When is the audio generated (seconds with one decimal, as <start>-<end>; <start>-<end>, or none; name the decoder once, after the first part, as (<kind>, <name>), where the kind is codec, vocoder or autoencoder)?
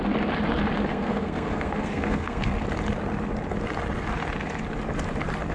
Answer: 0.9-2.5 (codec, SNAC)